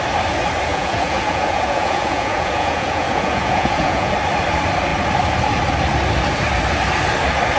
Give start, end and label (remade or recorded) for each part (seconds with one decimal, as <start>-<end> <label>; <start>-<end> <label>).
0.0-0.7 recorded; 0.7-4.1 remade; 4.1-7.6 recorded